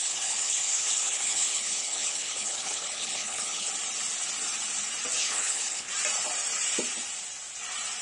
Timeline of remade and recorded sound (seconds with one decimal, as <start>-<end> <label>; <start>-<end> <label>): 0.0-3.7 remade; 3.7-5.2 recorded; 5.2-5.9 remade; 5.9-8.0 recorded